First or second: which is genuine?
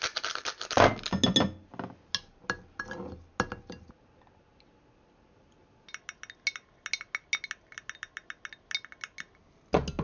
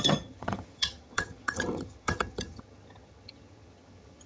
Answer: first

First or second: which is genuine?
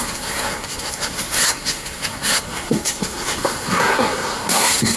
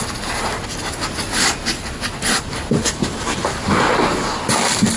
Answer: second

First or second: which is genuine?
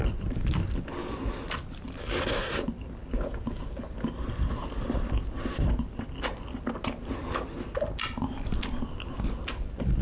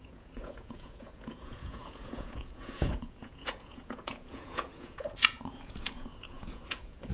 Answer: first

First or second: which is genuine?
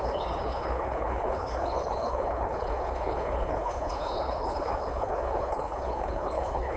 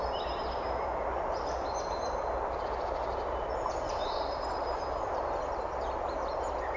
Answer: second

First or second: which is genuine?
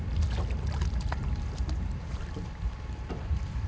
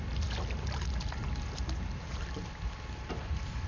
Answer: second